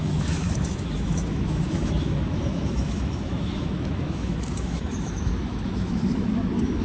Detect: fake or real fake